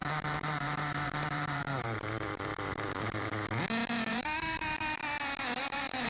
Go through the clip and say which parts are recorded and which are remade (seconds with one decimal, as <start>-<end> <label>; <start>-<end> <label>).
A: 0.0-3.3 remade; 3.3-4.1 recorded; 4.1-5.0 remade; 5.0-5.6 recorded; 5.6-6.1 remade